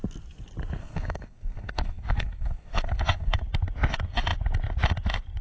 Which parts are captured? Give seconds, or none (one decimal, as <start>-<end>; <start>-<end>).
0.0-0.8; 3.4-5.4